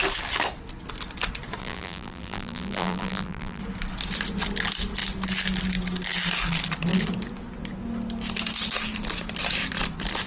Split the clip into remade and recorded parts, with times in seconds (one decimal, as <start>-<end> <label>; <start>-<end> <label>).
0.0-1.6 recorded; 1.6-3.6 remade; 3.6-10.3 recorded